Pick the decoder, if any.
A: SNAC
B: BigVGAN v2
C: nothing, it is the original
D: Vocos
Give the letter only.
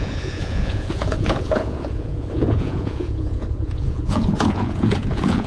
D